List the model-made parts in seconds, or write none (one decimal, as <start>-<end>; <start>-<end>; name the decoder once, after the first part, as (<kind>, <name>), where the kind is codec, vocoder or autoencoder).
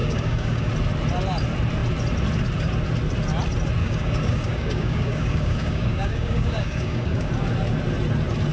0.0-0.7 (codec, DAC); 3.8-7.3